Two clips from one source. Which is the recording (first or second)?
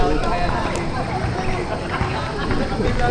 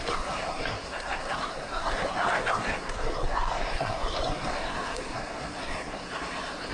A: first